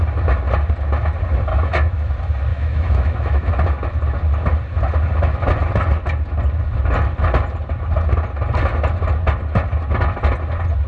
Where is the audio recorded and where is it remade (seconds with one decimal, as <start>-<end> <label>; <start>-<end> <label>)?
0.0-1.5 recorded; 1.5-2.1 remade; 2.1-2.5 recorded; 2.5-3.5 remade; 3.5-10.9 recorded